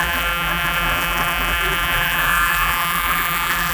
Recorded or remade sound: remade